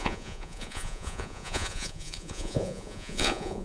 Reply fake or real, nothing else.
fake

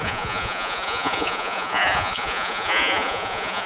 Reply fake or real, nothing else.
fake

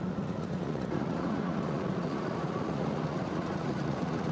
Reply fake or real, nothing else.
fake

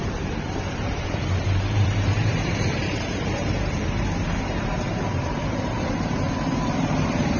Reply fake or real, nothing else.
fake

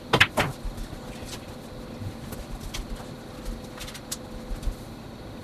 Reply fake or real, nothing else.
real